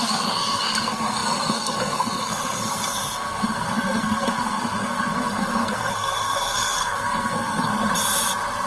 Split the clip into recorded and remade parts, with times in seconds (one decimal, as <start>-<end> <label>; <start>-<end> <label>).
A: 0.0-7.7 remade; 7.7-8.7 recorded